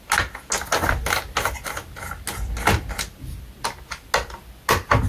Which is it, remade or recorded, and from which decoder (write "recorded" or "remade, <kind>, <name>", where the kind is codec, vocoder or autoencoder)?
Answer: recorded